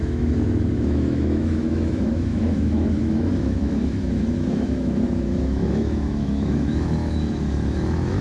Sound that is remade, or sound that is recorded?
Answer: remade